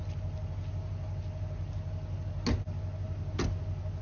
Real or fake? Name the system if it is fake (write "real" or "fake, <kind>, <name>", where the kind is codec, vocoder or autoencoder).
real